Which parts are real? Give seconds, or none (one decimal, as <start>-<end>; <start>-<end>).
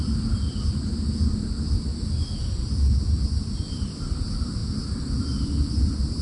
0.0-6.2